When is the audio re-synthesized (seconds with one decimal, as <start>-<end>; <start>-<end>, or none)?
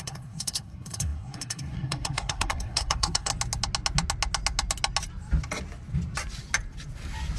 0.0-3.3